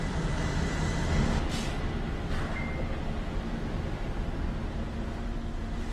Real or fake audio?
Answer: real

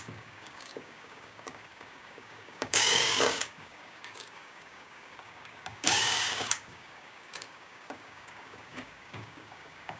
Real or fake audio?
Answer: fake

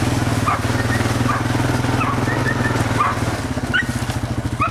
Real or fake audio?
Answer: real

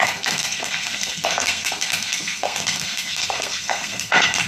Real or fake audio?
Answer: fake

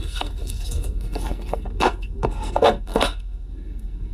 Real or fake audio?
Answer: fake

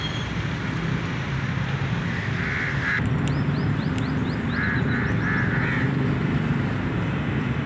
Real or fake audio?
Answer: real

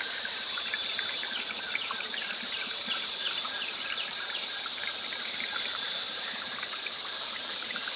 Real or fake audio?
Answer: fake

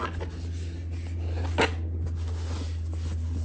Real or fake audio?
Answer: real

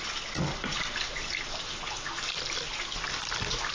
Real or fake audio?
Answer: real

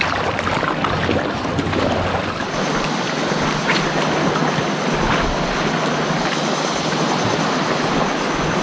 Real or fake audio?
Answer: real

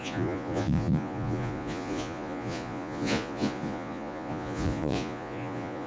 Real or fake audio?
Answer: fake